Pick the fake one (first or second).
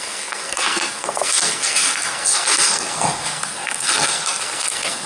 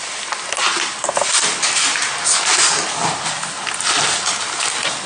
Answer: first